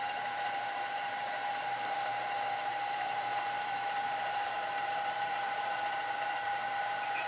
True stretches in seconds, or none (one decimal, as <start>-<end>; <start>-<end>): none